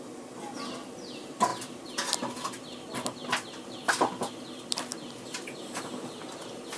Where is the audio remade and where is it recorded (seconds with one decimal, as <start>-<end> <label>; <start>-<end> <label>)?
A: 0.0-6.8 recorded